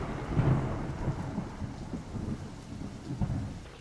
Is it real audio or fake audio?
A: real